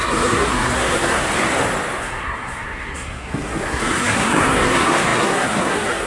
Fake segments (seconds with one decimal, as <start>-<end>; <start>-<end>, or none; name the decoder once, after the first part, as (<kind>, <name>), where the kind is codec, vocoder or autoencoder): 0.0-1.2 (codec, SNAC); 2.0-6.1